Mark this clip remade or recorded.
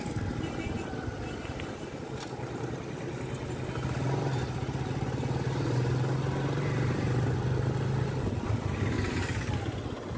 recorded